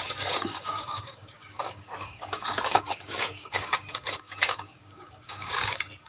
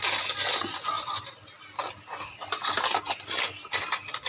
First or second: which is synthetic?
first